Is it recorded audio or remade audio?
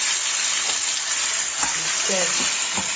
recorded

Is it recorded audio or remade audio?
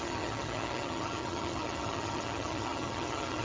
remade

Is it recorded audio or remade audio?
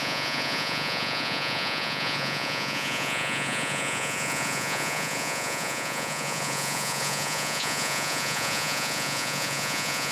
remade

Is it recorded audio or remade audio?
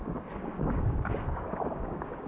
remade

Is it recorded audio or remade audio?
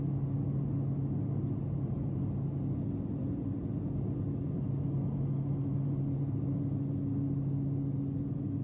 recorded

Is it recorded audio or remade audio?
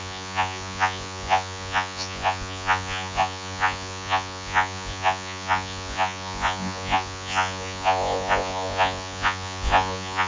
remade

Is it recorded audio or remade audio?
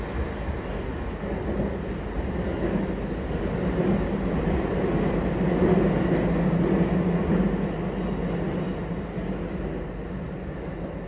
recorded